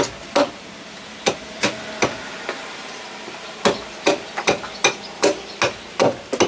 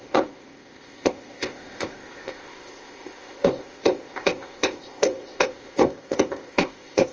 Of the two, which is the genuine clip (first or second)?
first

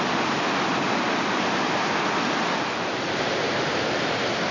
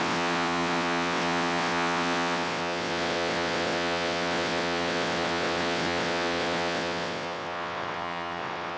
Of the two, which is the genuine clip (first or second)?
first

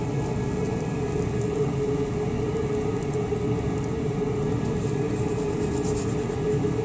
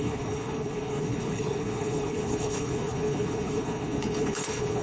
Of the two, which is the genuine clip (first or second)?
first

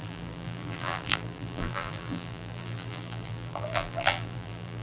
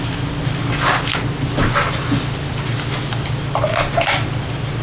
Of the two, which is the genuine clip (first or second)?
second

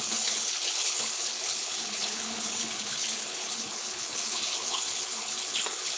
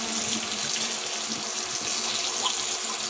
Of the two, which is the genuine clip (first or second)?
second